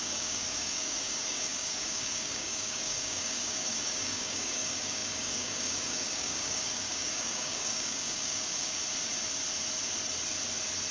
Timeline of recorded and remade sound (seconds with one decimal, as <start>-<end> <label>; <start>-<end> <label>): 0.0-8.8 remade; 8.8-10.9 recorded